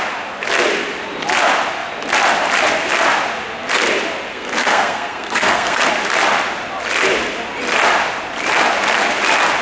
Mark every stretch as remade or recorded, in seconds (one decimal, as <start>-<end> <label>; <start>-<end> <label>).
0.0-4.3 recorded; 4.3-5.9 remade; 5.9-9.6 recorded